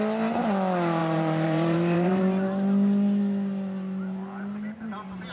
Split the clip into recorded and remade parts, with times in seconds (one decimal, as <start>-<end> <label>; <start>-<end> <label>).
0.0-1.0 recorded; 1.0-2.2 remade; 2.2-5.3 recorded

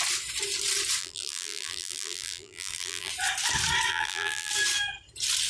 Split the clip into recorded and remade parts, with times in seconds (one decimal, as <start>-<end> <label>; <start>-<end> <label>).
0.0-1.0 recorded; 1.0-3.1 remade; 3.1-3.9 recorded; 3.9-4.5 remade; 4.5-5.5 recorded

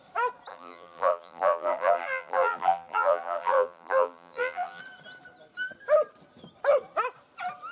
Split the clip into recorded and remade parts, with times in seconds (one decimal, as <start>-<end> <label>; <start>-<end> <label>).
0.0-0.5 recorded; 0.5-4.8 remade; 4.8-7.7 recorded

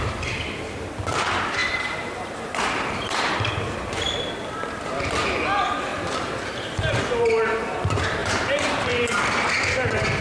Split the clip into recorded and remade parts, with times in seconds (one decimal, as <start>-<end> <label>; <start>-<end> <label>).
0.0-1.6 recorded; 1.6-3.5 remade; 3.5-5.9 recorded; 5.9-7.0 remade; 7.0-8.2 recorded; 8.2-9.1 remade; 9.1-10.2 recorded

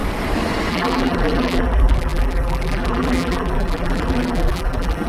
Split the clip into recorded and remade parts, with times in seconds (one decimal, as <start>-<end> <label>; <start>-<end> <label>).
0.0-0.7 recorded; 0.7-5.1 remade

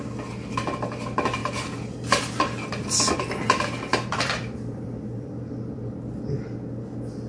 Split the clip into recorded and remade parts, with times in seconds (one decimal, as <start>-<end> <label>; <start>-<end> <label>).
0.0-3.9 recorded; 3.9-5.9 remade; 5.9-7.3 recorded